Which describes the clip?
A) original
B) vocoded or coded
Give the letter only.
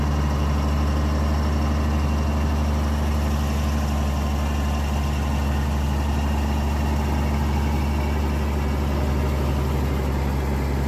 A